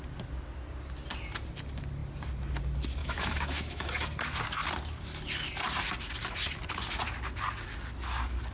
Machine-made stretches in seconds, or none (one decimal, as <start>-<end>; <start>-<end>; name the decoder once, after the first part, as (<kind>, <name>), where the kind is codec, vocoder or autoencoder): 3.0-3.9 (autoencoder, DAC-VAE)